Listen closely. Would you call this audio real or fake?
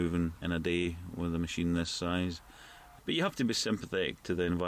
fake